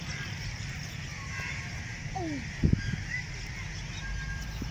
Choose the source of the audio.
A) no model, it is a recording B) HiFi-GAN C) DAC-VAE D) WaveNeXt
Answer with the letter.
A